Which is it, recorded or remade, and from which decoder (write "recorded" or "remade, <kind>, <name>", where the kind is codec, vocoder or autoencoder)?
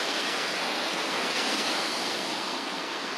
remade, codec, SNAC